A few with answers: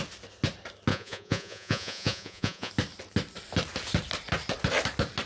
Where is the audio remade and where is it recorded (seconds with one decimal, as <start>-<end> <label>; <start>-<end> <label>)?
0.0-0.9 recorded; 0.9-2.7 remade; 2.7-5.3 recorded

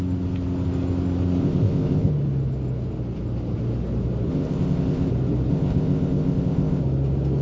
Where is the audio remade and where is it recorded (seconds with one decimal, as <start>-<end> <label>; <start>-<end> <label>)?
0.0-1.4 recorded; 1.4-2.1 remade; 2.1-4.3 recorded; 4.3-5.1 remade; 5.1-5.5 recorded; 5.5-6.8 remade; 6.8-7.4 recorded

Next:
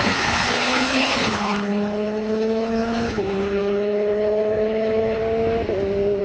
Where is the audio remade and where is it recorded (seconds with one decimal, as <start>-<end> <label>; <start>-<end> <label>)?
0.0-5.2 remade; 5.2-6.2 recorded